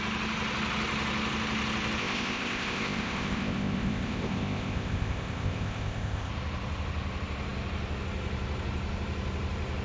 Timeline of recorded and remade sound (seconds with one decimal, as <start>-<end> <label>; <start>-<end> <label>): 0.0-2.0 recorded; 2.0-6.3 remade; 6.3-9.8 recorded